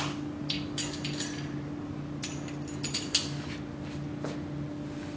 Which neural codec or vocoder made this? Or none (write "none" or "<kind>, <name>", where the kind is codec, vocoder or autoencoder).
none